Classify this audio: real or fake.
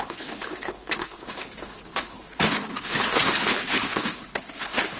fake